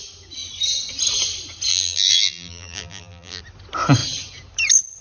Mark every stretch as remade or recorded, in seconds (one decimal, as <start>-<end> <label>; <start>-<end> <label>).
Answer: 0.0-1.7 recorded; 1.7-3.4 remade; 3.4-5.0 recorded